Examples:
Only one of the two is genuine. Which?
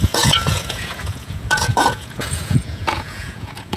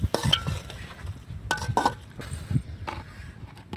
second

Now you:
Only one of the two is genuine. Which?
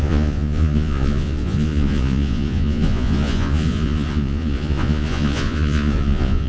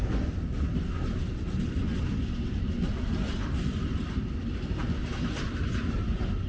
second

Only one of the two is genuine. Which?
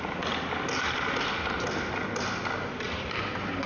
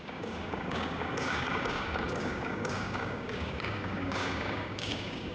first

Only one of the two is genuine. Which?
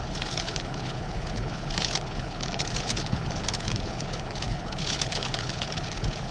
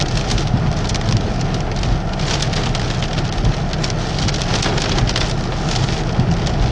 second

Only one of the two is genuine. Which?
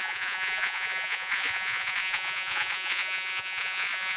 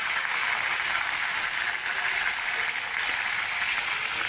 second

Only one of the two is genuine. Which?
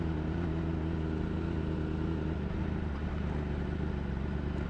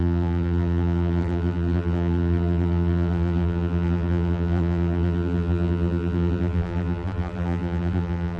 first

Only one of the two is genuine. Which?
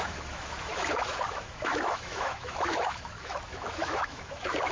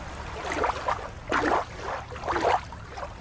second